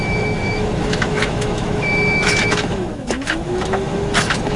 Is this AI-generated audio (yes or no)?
yes